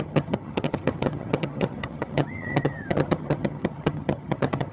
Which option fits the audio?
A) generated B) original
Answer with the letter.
A